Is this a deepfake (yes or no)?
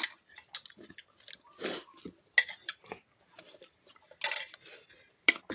no